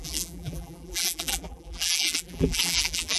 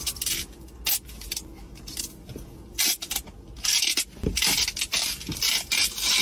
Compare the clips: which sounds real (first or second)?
second